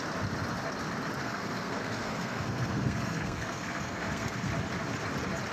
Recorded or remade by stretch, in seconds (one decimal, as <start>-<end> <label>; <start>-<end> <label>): 0.0-1.2 recorded; 1.2-4.5 remade; 4.5-5.5 recorded